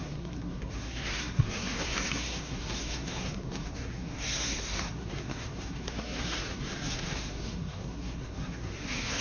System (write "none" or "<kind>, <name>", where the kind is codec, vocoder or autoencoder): codec, SNAC